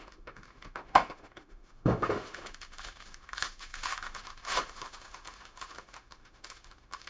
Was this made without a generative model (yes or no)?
no